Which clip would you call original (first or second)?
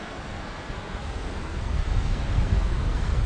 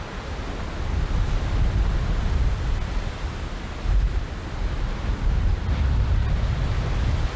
second